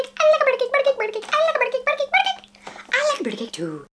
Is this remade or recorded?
recorded